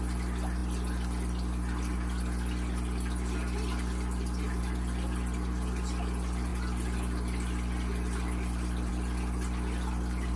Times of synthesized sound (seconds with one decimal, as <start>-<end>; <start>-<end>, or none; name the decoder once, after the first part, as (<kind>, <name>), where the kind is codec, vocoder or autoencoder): none